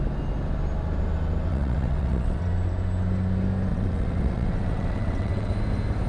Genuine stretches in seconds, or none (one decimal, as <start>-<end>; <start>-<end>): 0.0-1.5; 2.4-3.7; 5.5-6.1